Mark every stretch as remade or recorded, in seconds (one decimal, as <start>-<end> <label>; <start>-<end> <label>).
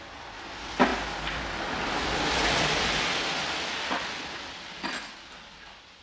0.0-6.0 recorded